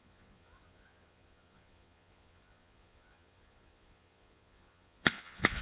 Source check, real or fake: fake